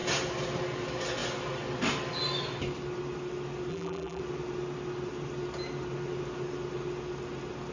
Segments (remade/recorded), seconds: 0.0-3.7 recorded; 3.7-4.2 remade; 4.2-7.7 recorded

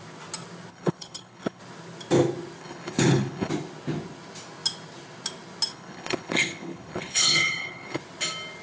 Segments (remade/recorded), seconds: 0.0-0.7 recorded; 0.7-1.6 remade; 1.6-2.6 recorded; 2.6-3.5 remade; 3.5-5.7 recorded; 5.7-8.0 remade; 8.0-8.6 recorded

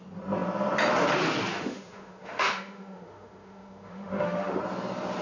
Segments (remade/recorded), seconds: 0.0-1.5 recorded; 1.5-4.6 remade; 4.6-5.2 recorded

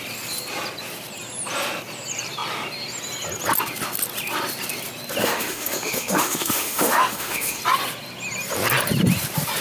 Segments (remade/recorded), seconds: 0.0-5.2 recorded; 5.2-7.6 remade; 7.6-9.6 recorded